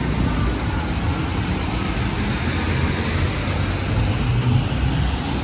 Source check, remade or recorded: recorded